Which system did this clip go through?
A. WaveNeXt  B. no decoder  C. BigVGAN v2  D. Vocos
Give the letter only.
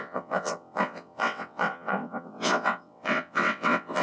A